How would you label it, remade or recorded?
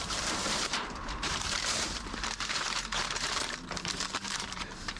remade